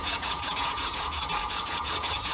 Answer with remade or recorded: remade